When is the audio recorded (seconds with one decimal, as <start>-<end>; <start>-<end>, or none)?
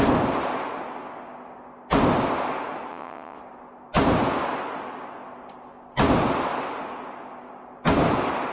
0.0-2.9; 3.4-8.5